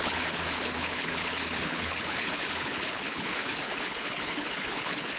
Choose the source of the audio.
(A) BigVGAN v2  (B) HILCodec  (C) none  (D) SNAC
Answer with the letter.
B